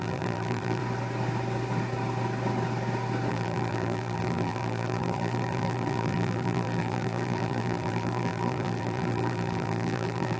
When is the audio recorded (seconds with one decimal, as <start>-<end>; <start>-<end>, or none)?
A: 0.8-3.3